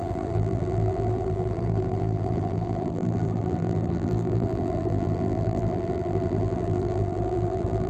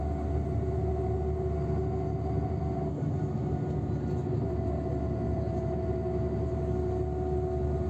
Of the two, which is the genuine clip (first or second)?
second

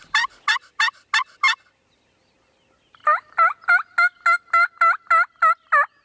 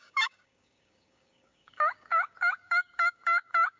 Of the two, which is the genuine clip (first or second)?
first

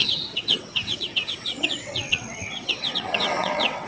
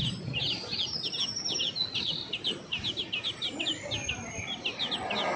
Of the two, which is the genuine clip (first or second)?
second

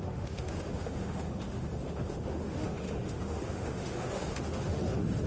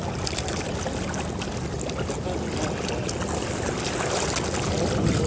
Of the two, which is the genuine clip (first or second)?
second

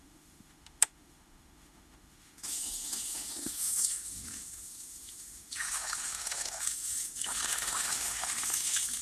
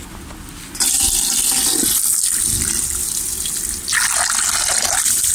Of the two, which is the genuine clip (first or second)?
second